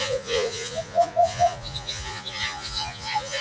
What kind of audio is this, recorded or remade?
remade